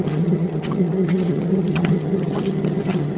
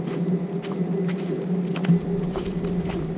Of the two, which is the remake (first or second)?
first